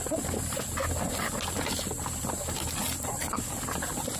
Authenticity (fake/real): real